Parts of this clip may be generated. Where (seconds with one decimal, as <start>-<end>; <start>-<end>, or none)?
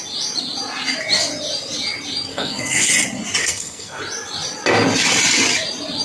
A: 2.3-2.9; 3.4-4.0